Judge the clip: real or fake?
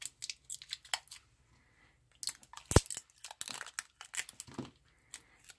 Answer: real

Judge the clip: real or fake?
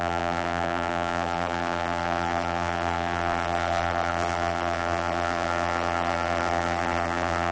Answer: fake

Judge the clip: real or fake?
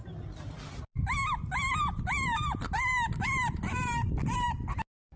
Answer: real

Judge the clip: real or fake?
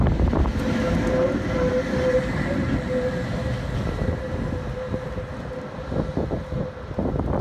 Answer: real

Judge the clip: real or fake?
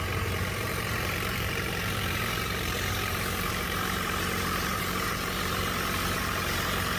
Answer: fake